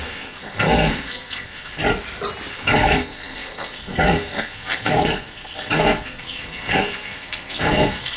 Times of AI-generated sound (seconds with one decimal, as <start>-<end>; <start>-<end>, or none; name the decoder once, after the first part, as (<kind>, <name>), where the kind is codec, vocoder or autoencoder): 0.0-1.8 (codec, SNAC); 2.5-8.2